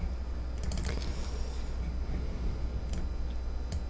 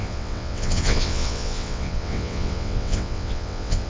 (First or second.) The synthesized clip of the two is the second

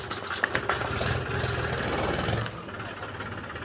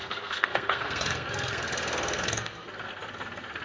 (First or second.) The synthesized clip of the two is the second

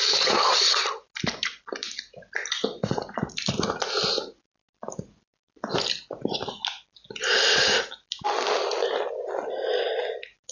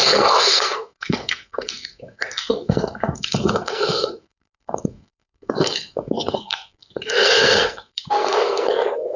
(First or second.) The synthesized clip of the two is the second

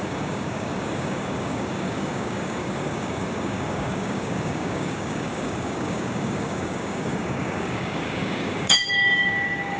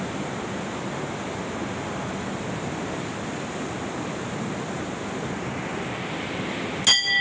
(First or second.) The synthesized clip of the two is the first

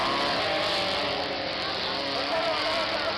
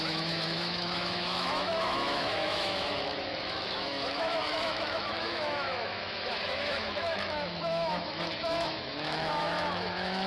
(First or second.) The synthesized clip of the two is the second